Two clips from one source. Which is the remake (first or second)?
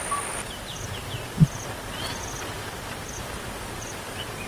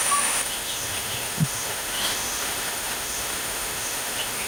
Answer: second